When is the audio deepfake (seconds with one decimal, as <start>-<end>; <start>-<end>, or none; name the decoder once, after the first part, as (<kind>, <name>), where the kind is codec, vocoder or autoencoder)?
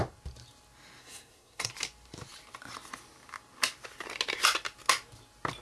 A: 1.0-1.7 (codec, SNAC)